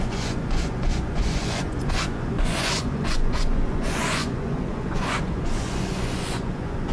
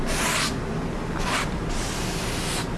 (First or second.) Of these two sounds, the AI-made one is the first